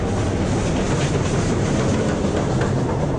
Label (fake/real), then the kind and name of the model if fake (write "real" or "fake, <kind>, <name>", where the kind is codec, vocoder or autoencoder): real